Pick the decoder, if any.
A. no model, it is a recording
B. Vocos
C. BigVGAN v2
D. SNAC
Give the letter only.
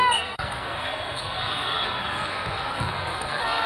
D